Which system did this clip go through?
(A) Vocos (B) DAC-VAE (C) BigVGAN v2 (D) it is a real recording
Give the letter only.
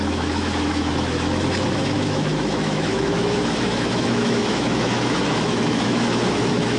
B